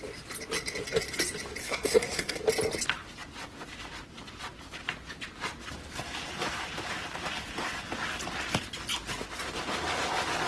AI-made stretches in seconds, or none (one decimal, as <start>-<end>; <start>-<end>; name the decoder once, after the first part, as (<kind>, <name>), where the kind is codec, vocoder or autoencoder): 1.6-2.4 (codec, SNAC)